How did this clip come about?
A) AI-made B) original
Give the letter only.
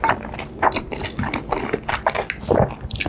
B